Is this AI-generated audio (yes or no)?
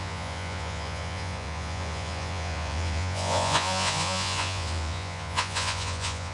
yes